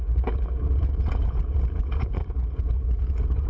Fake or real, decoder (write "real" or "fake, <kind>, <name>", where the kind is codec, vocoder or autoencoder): fake, vocoder, Vocos